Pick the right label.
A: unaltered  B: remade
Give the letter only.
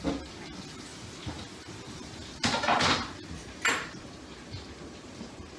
A